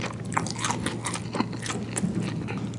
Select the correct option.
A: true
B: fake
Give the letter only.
A